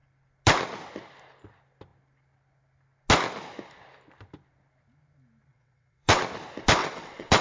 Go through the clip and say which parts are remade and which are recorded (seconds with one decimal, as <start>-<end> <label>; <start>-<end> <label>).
0.0-5.5 recorded; 5.5-6.2 remade; 6.2-6.8 recorded; 6.8-7.4 remade